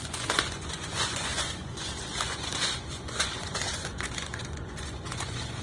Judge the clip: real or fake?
fake